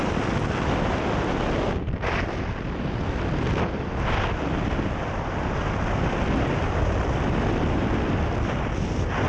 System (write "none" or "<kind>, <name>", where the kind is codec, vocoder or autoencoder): none